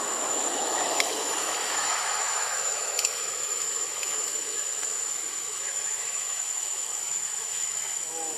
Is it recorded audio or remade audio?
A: remade